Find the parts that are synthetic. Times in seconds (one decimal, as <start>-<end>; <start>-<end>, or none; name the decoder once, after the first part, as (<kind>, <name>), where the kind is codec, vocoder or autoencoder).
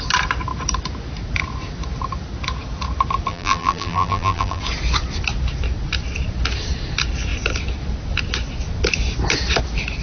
3.3-4.6 (vocoder, BigVGAN v2)